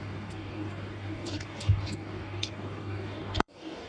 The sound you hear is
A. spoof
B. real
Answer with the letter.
A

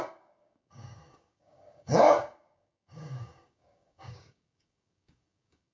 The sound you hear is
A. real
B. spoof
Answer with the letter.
B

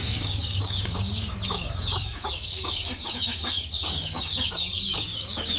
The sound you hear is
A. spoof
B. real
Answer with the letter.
A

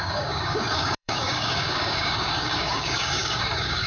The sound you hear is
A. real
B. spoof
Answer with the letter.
B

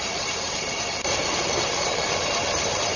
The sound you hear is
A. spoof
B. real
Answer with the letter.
B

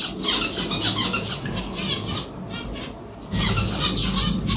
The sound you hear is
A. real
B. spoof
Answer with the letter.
A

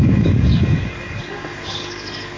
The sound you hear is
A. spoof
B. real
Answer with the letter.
A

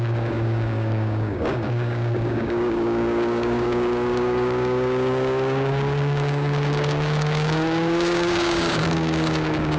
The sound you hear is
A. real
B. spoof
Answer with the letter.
B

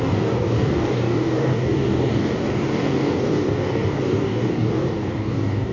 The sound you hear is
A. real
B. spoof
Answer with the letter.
B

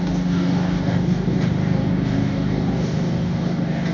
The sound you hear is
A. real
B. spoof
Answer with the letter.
B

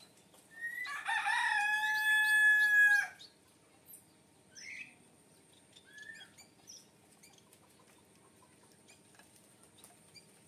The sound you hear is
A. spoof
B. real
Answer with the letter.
B